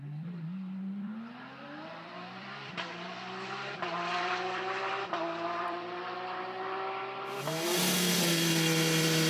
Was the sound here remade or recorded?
remade